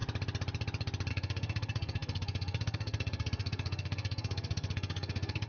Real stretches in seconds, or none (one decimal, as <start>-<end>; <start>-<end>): 0.0-1.1